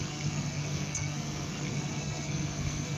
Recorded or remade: remade